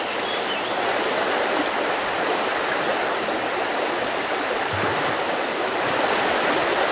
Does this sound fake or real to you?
real